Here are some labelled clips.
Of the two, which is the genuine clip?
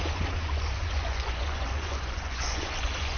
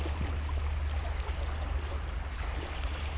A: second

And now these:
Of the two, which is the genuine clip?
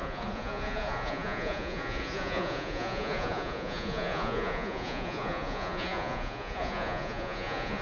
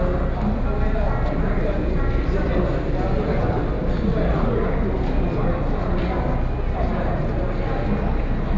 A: second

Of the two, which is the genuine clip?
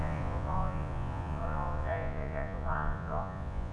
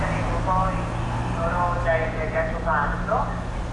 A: second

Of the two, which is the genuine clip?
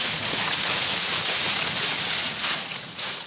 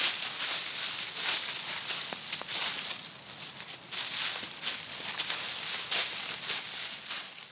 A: second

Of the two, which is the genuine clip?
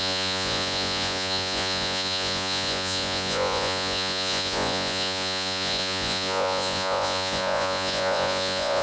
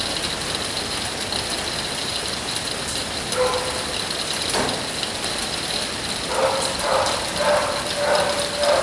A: second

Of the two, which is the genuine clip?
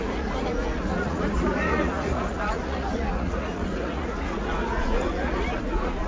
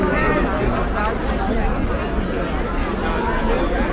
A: second